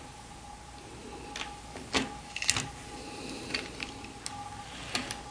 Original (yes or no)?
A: yes